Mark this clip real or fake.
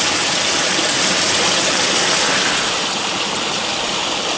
real